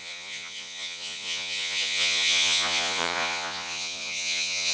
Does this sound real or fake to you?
fake